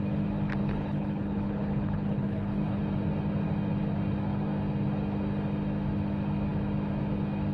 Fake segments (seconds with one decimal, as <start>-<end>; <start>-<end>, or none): 0.6-2.8